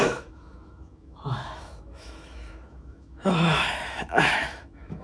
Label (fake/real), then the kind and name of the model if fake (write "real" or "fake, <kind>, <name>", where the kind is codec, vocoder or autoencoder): fake, autoencoder, DAC-VAE